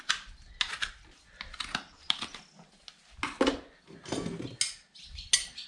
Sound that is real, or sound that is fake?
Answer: real